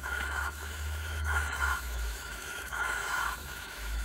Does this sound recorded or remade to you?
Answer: remade